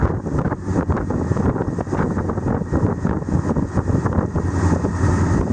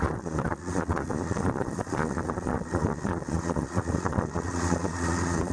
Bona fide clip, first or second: first